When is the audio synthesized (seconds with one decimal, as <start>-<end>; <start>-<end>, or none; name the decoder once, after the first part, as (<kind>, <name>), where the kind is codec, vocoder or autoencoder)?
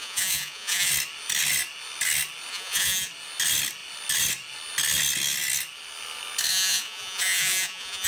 0.0-0.9 (vocoder, Vocos); 2.5-3.1; 6.5-8.1